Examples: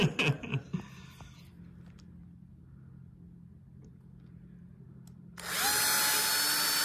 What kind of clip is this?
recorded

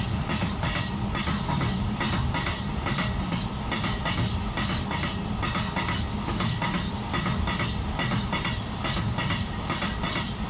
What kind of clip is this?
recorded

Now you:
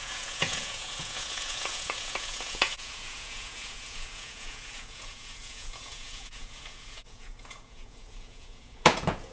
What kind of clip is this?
remade